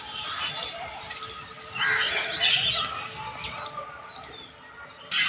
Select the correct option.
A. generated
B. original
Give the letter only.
B